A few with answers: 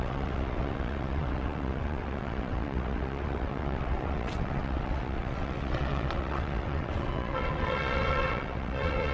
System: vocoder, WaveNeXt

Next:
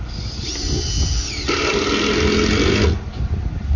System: none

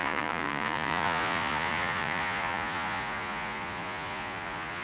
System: vocoder, Vocos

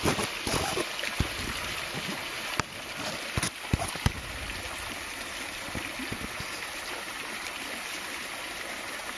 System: none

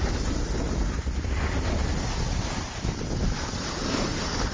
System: none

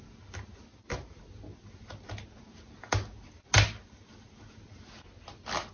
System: none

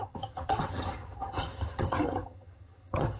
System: vocoder, HiFi-GAN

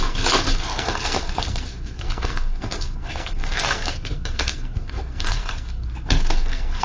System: codec, SNAC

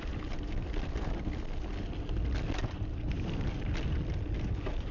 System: none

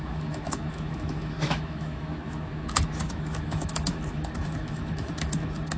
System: autoencoder, DAC-VAE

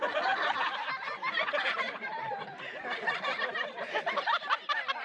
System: none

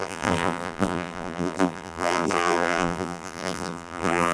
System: vocoder, BigVGAN v2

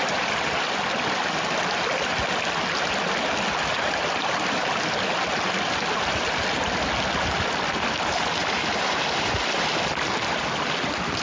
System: none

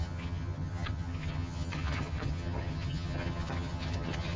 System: vocoder, HiFi-GAN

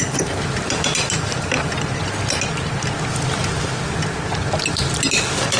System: none